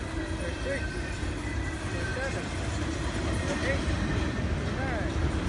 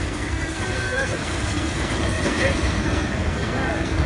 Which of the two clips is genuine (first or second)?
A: first